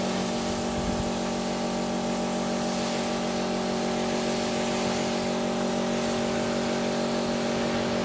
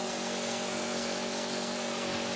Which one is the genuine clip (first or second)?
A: first